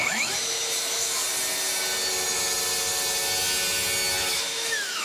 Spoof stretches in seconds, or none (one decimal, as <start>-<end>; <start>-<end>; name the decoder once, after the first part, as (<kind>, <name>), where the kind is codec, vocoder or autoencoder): 0.0-1.2 (autoencoder, DAC-VAE); 4.2-5.0